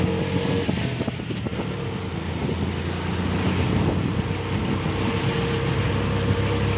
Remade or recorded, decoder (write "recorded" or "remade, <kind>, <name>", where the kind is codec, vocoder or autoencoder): recorded